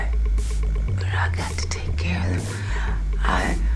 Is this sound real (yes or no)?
no